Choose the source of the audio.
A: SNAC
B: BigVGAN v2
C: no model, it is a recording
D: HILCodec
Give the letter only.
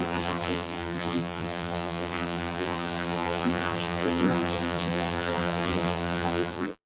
B